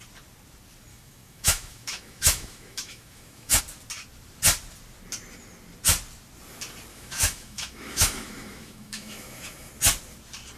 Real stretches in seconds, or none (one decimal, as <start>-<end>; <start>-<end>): 0.0-0.9; 3.6-6.9; 9.7-10.6